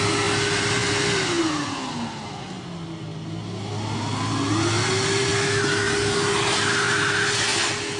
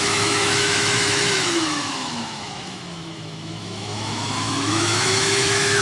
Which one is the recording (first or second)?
first